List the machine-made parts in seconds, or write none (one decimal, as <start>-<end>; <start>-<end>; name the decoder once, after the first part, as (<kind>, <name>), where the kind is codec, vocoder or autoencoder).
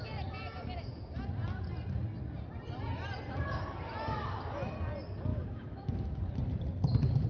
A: 5.3-6.1 (autoencoder, DAC-VAE)